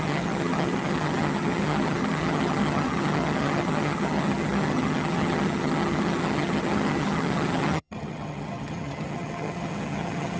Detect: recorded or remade remade